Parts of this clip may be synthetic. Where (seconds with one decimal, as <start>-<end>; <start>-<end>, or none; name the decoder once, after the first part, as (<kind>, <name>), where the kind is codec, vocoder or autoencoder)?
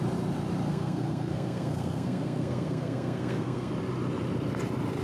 0.7-3.7 (codec, SNAC)